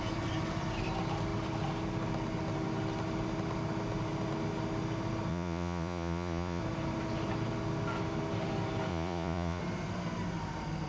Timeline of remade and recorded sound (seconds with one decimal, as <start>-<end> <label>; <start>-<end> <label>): 0.0-5.3 recorded; 5.3-6.6 remade; 6.6-8.9 recorded; 8.9-9.6 remade; 9.6-10.9 recorded